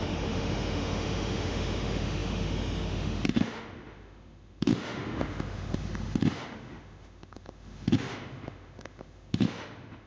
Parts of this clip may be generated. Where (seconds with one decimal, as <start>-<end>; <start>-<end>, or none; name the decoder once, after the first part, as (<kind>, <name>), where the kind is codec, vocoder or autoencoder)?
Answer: 0.0-10.1 (autoencoder, DAC-VAE)